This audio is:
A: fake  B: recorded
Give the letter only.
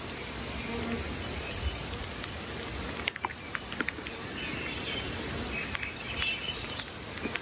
B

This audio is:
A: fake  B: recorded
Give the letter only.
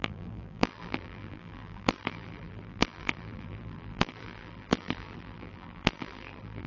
A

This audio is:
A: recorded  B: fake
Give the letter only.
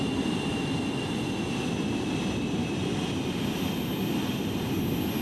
A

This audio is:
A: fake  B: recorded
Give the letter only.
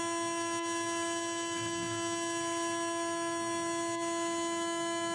B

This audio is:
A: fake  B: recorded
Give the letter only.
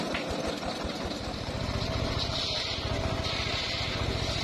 B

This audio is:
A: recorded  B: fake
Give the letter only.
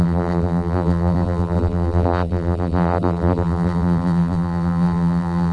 B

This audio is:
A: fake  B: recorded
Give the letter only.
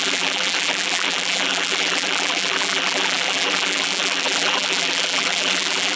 A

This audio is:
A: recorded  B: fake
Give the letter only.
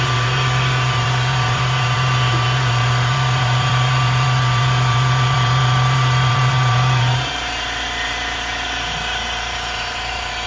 B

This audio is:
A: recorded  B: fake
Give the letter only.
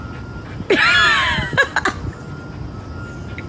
A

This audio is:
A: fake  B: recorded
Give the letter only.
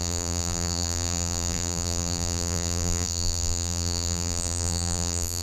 A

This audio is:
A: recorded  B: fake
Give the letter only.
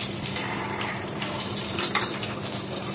B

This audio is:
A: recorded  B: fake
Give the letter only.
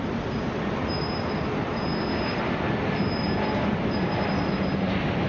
B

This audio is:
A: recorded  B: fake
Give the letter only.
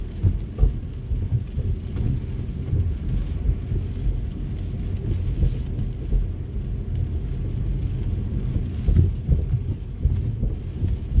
A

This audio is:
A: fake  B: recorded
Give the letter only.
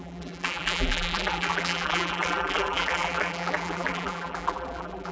A